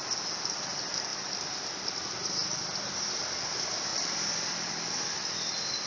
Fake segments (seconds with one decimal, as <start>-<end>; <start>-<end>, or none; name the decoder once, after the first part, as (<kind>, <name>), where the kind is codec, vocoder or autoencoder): 3.9-4.7 (vocoder, BigVGAN v2)